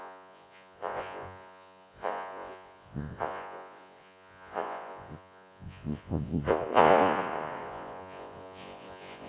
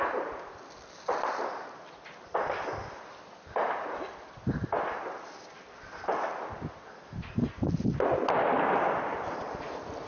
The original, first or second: second